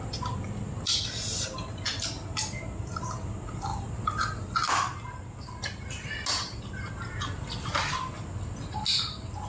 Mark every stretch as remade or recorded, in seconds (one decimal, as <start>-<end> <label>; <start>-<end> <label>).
0.0-9.5 recorded